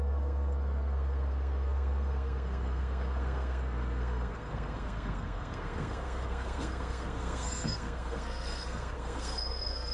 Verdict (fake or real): fake